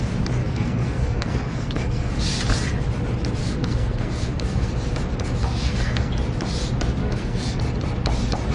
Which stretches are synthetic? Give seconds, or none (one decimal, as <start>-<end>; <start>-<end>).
0.4-2.2; 3.4-4.7; 5.4-6.1; 7.0-7.6